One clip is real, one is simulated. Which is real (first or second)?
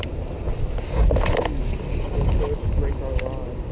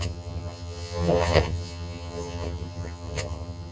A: first